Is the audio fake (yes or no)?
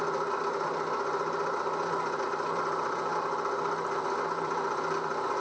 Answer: yes